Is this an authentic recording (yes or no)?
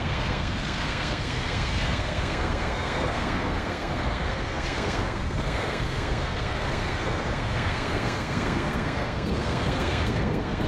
no